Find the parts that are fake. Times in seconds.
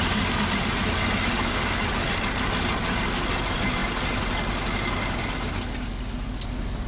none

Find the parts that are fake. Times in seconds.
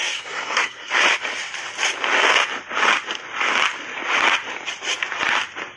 0.0-0.9 (codec, SNAC)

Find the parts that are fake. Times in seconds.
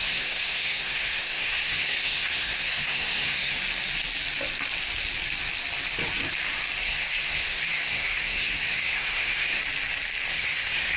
0.0-3.6 (codec, SNAC); 6.8-9.6; 10.3-11.0